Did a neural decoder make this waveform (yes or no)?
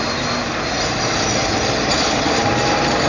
no